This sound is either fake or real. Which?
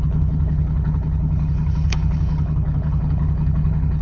fake